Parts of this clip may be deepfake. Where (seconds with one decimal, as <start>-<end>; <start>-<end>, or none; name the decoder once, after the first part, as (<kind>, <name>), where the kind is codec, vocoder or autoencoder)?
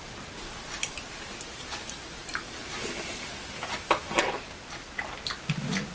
none